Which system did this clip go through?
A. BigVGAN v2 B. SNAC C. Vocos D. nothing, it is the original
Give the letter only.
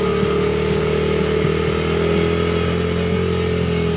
D